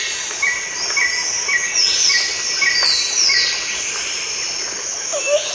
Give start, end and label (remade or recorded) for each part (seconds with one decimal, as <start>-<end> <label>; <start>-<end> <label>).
0.0-4.8 recorded; 4.8-5.5 remade